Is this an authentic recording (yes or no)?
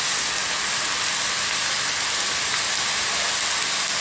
yes